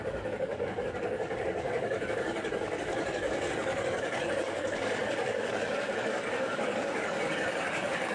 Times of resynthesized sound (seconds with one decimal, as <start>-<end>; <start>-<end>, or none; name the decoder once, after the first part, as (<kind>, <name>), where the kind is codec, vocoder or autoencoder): 0.0-8.1 (codec, DAC)